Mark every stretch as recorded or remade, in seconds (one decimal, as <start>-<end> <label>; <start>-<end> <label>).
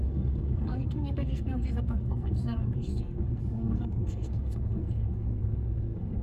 0.0-6.2 remade